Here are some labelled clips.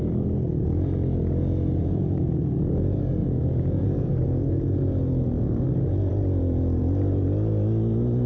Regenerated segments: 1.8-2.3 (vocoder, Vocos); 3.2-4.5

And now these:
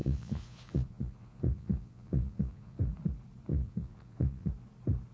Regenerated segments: 0.0-2.8 (vocoder, Vocos); 3.5-4.5

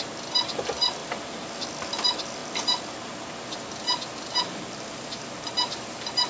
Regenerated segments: none

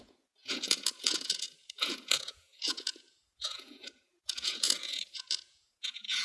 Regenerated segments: 0.0-6.2 (vocoder, Vocos)

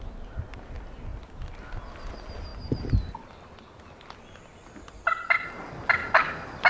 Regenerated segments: none

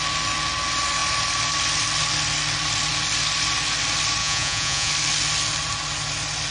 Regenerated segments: 4.2-4.9 (vocoder, Vocos)

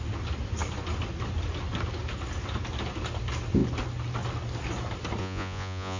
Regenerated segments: 5.2-6.0 (vocoder, Vocos)